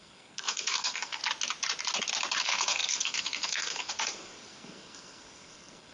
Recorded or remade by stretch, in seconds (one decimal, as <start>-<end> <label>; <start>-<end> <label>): 0.0-1.2 remade; 1.2-2.4 recorded; 2.4-5.9 remade